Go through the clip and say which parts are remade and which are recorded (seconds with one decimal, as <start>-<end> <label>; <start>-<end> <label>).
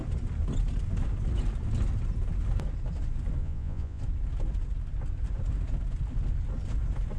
0.0-3.4 recorded; 3.4-4.0 remade; 4.0-7.2 recorded